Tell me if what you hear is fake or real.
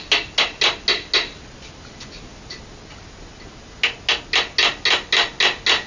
real